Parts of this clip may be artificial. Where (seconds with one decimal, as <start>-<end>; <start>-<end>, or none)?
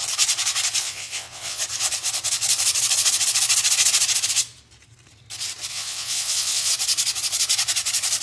0.8-1.6; 5.7-6.7